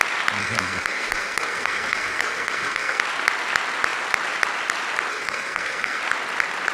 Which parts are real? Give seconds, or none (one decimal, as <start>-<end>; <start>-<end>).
0.0-0.4; 3.0-5.1; 6.0-6.7